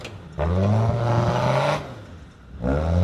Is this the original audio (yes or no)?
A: yes